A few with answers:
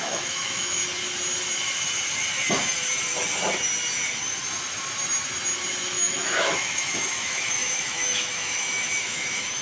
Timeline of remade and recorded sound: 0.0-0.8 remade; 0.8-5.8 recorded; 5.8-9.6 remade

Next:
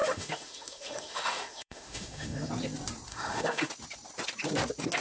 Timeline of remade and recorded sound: 0.0-2.5 remade; 2.5-3.1 recorded; 3.1-3.7 remade; 3.7-5.0 recorded